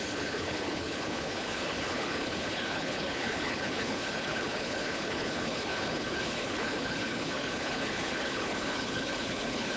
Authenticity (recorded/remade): remade